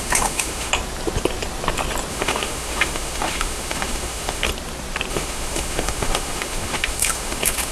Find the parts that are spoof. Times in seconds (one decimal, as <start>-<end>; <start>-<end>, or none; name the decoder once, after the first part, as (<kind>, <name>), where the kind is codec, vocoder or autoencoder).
0.0-0.7 (autoencoder, DAC-VAE); 2.1-4.5; 5.1-7.7